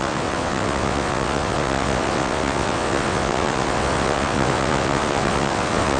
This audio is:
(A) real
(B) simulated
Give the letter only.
B